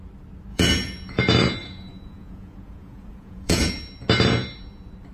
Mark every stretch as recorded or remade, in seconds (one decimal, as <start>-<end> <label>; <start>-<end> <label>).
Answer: 0.0-0.5 recorded; 0.5-1.2 remade; 1.2-1.6 recorded; 1.6-3.7 remade; 3.7-5.1 recorded